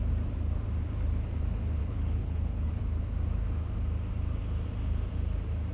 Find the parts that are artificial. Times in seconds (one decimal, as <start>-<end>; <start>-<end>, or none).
1.8-2.8